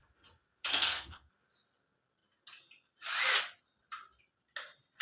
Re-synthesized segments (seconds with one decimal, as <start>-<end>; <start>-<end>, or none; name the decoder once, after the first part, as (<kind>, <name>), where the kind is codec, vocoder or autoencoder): 0.7-1.3 (codec, SNAC)